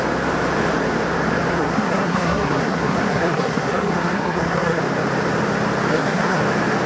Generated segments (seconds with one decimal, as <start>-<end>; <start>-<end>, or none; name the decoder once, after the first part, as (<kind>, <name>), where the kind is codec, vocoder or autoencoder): 1.5-4.8 (codec, SNAC); 5.9-6.4